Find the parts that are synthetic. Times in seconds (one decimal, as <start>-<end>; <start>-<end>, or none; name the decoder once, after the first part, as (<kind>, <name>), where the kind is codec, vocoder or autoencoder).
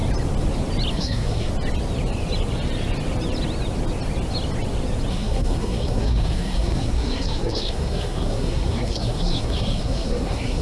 0.9-1.5 (codec, SNAC); 5.1-10.6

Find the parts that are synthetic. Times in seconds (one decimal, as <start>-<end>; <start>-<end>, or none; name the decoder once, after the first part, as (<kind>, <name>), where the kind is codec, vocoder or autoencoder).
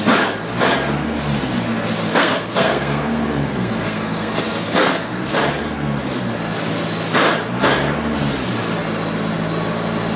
2.1-5.4 (codec, SNAC)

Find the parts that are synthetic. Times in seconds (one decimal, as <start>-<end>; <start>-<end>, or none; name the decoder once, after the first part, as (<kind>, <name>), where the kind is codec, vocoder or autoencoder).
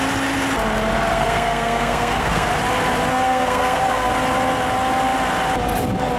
1.1-2.5 (codec, SNAC); 3.1-4.1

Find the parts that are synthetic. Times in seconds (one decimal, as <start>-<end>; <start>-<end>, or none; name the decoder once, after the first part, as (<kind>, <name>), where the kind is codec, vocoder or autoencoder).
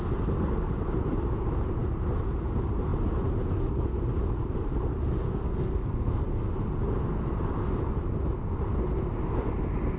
5.2-6.5 (codec, SNAC)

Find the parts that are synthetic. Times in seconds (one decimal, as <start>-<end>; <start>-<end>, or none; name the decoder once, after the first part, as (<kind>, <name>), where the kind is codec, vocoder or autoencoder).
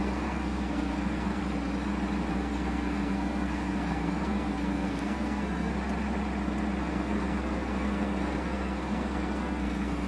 0.0-1.4 (codec, SNAC); 2.3-5.7; 6.8-10.1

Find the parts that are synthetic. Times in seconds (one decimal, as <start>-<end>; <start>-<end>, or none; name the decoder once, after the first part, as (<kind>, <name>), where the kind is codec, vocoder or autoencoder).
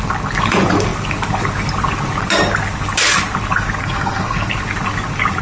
3.8-4.5 (codec, SNAC)